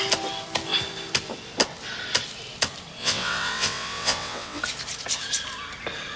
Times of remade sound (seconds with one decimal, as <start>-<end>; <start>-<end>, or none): 3.0-4.6